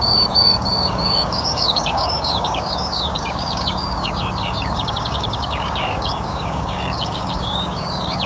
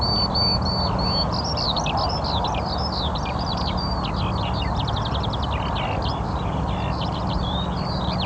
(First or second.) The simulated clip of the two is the first